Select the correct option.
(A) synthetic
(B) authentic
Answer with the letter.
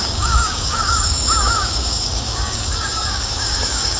A